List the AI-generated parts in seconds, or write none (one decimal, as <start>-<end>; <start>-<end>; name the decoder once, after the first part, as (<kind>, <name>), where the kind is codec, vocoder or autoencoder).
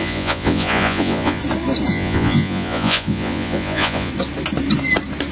0.0-1.4 (vocoder, Vocos); 1.9-4.1